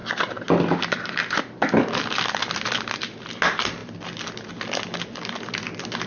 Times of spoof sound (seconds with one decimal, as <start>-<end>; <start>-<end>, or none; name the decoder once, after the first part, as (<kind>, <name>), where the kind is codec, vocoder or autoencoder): none